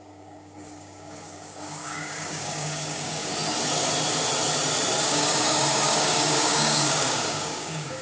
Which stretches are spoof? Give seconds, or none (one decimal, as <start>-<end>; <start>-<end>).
0.0-3.3; 5.0-8.0